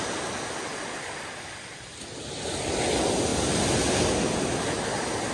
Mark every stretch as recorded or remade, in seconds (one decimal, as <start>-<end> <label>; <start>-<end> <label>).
0.0-5.3 recorded